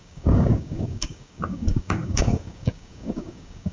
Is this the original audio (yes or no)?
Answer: no